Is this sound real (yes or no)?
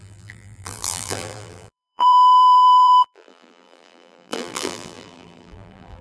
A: no